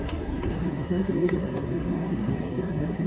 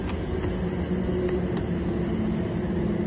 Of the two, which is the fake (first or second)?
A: first